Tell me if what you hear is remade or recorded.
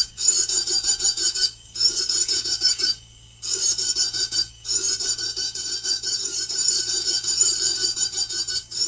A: remade